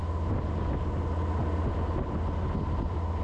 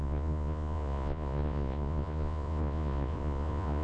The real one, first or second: first